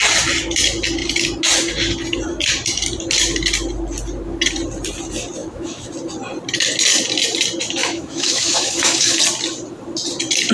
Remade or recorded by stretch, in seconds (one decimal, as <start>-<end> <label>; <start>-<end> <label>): 0.0-5.4 recorded; 5.4-5.9 remade; 5.9-7.8 recorded; 7.8-9.2 remade; 9.2-10.5 recorded